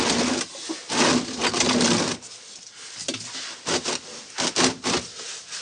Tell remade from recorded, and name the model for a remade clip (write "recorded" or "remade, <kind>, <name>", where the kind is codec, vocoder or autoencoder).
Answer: recorded